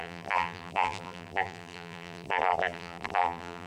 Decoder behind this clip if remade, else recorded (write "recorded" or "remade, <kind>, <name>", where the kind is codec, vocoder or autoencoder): remade, vocoder, BigVGAN v2